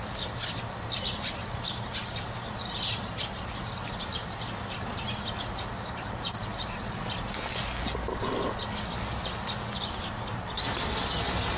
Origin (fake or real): real